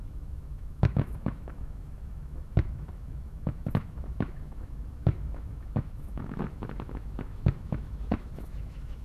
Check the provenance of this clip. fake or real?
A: fake